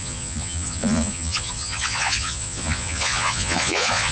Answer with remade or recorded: remade